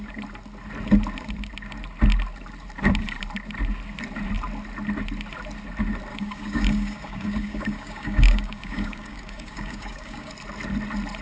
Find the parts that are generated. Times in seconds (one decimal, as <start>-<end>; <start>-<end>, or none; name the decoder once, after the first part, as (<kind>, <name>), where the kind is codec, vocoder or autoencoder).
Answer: 6.1-10.3 (codec, DAC)